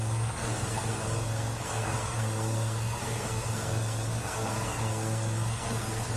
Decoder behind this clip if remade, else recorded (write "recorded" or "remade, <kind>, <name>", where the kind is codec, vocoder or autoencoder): remade, codec, SNAC